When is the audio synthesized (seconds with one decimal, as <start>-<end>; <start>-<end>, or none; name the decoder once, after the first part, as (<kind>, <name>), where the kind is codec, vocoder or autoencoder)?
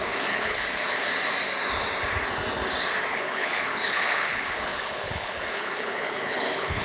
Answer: 0.0-1.1 (codec, HILCodec); 3.1-6.8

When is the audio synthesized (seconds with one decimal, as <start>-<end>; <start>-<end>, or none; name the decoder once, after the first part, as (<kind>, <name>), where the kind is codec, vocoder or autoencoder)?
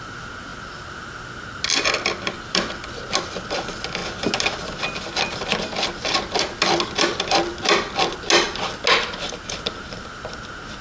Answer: none